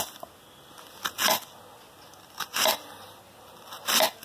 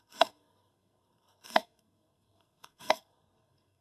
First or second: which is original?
first